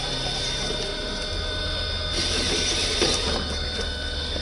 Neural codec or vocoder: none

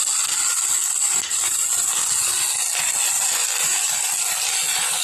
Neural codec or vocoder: none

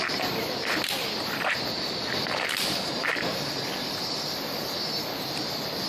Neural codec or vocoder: vocoder, BigVGAN v2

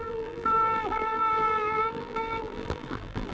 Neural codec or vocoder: vocoder, BigVGAN v2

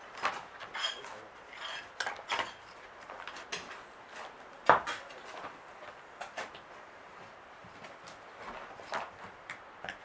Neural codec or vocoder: none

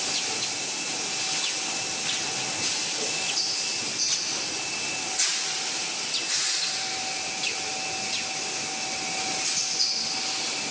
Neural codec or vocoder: none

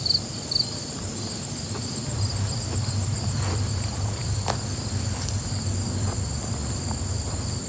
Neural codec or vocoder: vocoder, BigVGAN v2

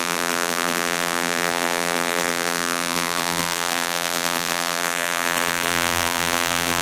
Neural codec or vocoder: vocoder, BigVGAN v2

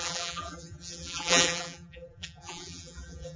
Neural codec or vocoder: vocoder, BigVGAN v2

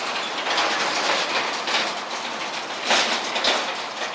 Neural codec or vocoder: none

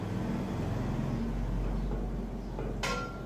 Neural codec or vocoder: none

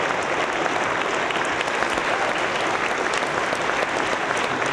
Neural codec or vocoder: none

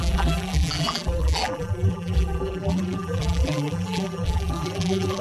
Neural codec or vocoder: vocoder, BigVGAN v2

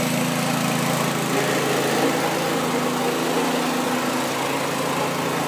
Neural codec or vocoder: none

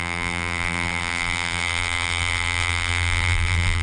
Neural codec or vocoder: vocoder, BigVGAN v2